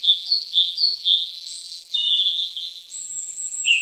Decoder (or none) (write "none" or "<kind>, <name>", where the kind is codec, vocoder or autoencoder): vocoder, BigVGAN v2